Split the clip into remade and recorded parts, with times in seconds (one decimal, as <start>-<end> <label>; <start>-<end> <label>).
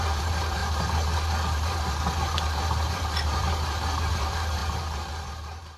0.0-5.8 remade